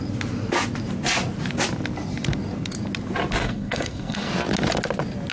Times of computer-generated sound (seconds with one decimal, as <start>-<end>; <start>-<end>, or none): 3.4-4.3